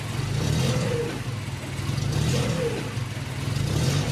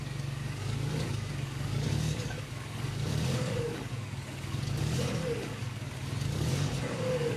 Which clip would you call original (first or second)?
first